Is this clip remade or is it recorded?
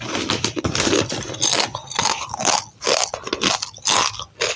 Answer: recorded